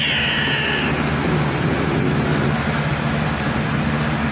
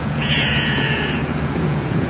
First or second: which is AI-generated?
second